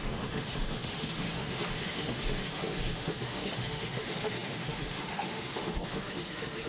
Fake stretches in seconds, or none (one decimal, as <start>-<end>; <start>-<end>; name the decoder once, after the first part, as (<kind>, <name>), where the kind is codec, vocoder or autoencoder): 0.0-6.7 (autoencoder, DAC-VAE)

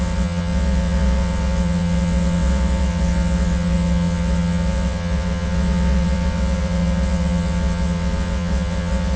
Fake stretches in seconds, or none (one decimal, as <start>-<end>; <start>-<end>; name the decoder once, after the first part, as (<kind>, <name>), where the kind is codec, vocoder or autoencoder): 0.0-9.2 (vocoder, WaveNeXt)

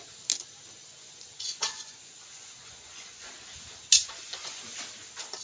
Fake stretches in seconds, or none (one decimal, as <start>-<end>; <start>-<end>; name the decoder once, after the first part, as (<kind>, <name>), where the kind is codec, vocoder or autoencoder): 0.9-3.3 (vocoder, Vocos); 4.0-4.6

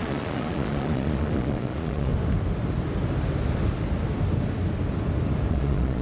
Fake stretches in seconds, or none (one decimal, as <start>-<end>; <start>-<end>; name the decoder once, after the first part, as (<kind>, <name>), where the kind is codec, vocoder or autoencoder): 0.0-2.1 (vocoder, Vocos); 5.5-6.0

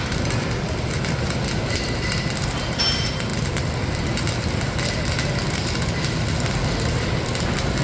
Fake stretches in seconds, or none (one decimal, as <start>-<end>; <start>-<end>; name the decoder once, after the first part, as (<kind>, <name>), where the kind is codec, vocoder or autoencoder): none

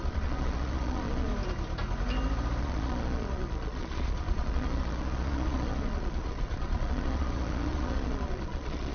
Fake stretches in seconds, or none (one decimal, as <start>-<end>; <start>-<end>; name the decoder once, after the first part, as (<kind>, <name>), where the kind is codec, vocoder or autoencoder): 0.0-1.3 (vocoder, Vocos); 2.6-8.9